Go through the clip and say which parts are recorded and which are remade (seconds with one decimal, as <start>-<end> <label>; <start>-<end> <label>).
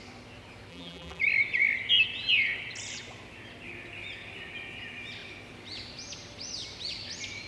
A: 0.0-0.7 recorded; 0.7-1.2 remade; 1.2-7.5 recorded